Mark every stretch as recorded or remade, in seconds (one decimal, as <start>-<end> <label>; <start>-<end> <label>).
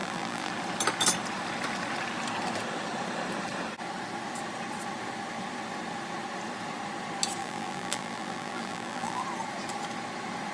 0.0-0.5 remade; 0.5-7.4 recorded; 7.4-9.2 remade; 9.2-10.5 recorded